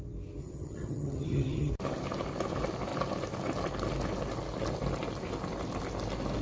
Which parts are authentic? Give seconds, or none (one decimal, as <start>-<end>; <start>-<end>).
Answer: 0.0-0.4; 1.7-6.4